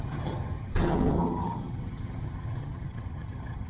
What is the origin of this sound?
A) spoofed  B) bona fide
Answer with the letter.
A